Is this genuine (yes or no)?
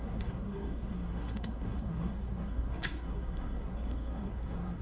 no